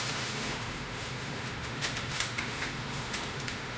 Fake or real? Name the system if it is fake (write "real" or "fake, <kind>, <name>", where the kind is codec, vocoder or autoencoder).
fake, autoencoder, DAC-VAE